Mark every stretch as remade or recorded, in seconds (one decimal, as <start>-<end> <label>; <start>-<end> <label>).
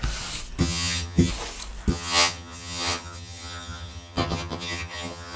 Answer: 0.0-0.6 recorded; 0.6-1.3 remade; 1.3-1.9 recorded; 1.9-5.4 remade